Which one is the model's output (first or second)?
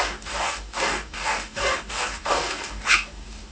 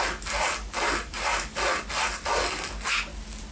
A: first